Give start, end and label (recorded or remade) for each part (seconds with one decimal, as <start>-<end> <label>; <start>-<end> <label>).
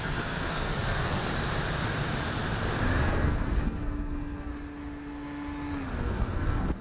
0.0-1.2 remade; 1.2-3.0 recorded; 3.0-4.5 remade; 4.5-6.0 recorded; 6.0-6.8 remade